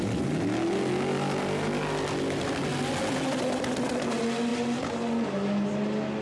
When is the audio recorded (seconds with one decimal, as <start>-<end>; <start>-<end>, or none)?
0.0-6.2